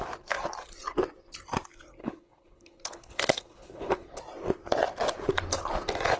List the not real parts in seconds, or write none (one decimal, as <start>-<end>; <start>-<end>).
2.0-4.2